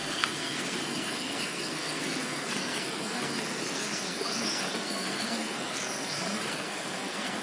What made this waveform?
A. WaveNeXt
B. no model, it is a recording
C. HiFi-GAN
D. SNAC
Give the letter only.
D